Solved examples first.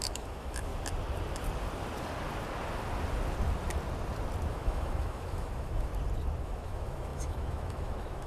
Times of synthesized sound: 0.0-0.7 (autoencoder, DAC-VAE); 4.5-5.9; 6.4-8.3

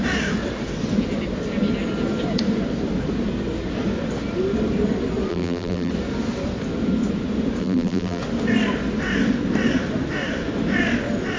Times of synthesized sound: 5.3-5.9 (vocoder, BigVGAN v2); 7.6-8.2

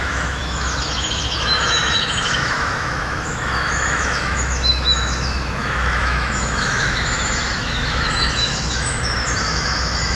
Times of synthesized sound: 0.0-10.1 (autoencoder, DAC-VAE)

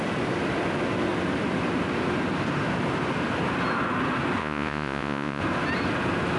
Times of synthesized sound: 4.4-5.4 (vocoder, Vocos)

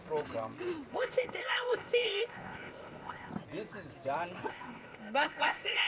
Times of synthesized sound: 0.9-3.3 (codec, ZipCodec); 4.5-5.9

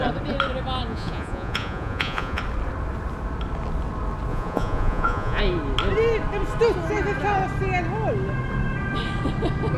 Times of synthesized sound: 0.9-2.4 (vocoder, Vocos); 4.3-5.4

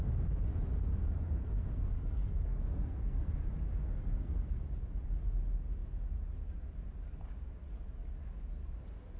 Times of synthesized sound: 1.4-3.3 (codec, SNAC); 3.8-4.6

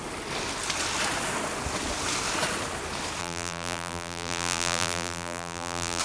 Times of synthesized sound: 3.2-6.0 (vocoder, BigVGAN v2)